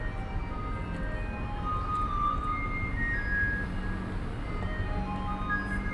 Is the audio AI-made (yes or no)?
no